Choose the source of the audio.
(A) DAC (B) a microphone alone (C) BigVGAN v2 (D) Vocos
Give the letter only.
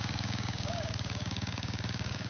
A